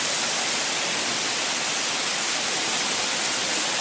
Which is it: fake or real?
real